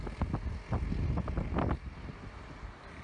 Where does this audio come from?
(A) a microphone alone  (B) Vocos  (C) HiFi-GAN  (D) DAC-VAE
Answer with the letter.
A